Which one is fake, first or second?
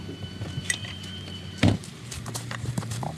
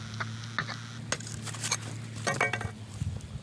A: first